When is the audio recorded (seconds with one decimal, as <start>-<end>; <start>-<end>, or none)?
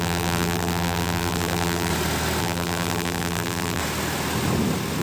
1.9-2.4; 3.8-5.0